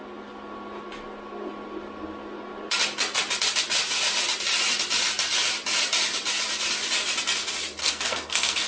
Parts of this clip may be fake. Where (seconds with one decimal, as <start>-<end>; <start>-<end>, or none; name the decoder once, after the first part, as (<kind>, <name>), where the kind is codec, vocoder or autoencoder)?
7.8-8.7 (codec, SNAC)